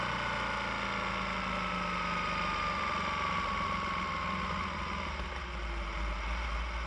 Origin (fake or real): real